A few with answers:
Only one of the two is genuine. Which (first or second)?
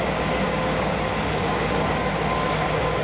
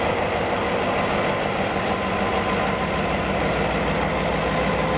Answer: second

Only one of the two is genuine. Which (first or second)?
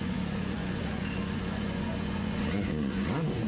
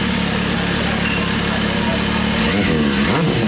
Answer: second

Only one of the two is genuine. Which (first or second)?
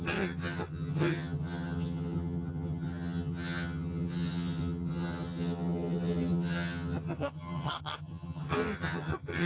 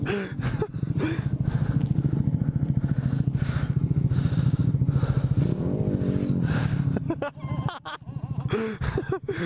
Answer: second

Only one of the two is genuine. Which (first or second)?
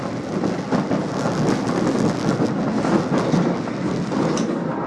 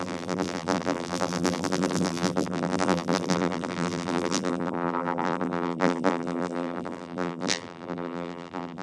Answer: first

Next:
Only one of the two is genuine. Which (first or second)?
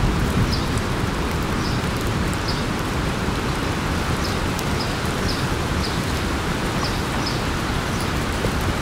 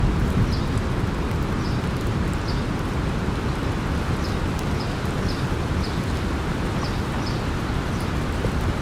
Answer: second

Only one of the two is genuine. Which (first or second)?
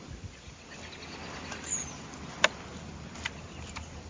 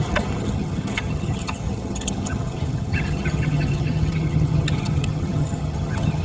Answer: first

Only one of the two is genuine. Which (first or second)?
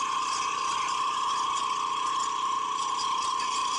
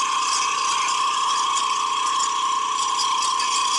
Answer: second